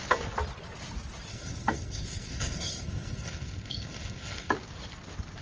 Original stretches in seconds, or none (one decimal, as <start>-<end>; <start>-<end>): 0.0-1.3; 4.5-5.4